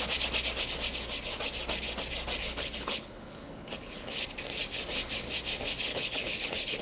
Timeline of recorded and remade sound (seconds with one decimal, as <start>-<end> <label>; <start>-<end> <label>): 0.0-2.4 recorded; 2.4-4.1 remade; 4.1-5.9 recorded; 5.9-6.8 remade